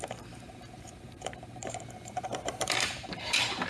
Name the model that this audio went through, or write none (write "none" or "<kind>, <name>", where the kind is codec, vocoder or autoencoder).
vocoder, BigVGAN v2